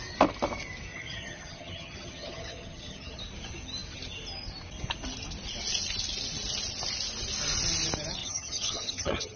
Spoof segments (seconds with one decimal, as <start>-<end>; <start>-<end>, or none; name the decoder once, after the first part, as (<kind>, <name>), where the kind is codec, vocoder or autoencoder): 0.9-3.2 (vocoder, HiFi-GAN); 8.2-9.4